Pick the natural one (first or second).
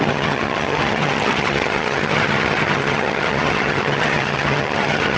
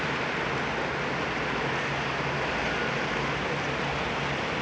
second